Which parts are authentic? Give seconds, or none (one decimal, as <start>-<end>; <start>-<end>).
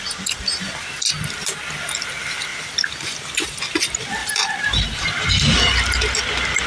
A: 0.0-2.5; 3.6-4.2; 5.2-6.7